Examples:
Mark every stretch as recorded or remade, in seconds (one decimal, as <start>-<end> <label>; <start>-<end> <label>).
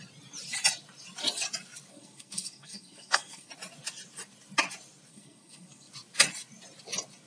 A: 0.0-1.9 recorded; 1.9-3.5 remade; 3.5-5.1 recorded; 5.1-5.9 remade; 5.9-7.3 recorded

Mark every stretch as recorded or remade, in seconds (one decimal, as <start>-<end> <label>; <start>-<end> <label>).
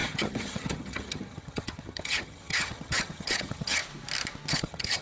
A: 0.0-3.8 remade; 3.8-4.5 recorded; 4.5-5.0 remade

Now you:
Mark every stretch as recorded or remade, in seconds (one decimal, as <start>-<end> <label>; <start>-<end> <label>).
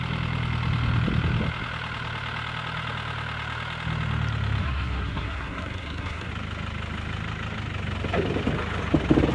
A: 0.0-4.6 recorded; 4.6-6.3 remade; 6.3-9.3 recorded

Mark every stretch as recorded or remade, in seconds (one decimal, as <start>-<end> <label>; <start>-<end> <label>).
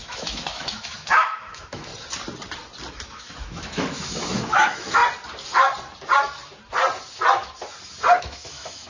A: 0.0-1.9 remade; 1.9-2.9 recorded; 2.9-5.0 remade; 5.0-8.2 recorded; 8.2-8.9 remade